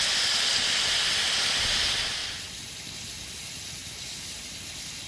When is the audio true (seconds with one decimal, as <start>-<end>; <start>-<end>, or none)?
0.0-5.1

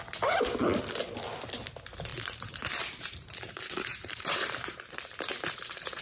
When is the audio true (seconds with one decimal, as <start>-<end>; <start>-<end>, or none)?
0.0-2.1

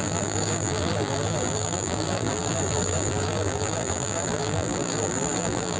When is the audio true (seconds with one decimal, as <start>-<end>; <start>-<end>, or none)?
none